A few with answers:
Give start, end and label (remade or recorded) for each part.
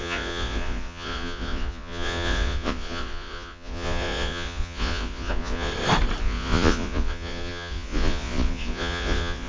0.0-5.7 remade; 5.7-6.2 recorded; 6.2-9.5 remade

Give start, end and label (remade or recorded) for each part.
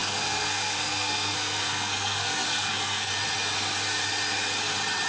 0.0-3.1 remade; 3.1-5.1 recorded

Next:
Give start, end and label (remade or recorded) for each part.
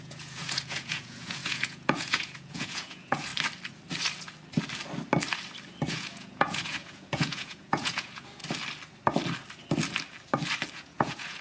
0.0-3.3 remade; 3.3-5.9 recorded; 5.9-8.4 remade; 8.4-10.7 recorded; 10.7-11.4 remade